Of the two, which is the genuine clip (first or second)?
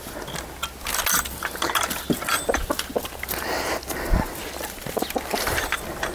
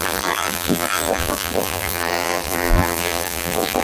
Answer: first